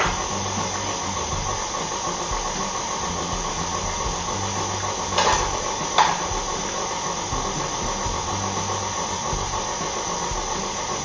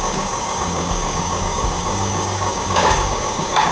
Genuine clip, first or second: first